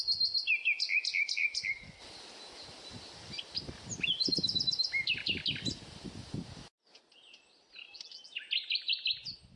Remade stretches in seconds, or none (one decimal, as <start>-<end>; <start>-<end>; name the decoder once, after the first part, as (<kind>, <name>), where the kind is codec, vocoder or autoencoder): none